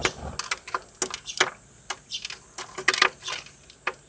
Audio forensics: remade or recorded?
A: recorded